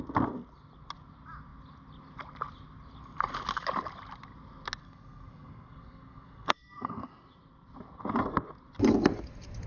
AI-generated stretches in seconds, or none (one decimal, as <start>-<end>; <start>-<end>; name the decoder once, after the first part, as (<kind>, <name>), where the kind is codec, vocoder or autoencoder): 4.8-7.1 (codec, SNAC)